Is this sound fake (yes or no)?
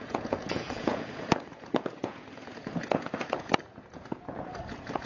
yes